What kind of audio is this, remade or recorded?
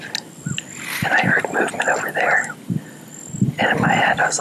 recorded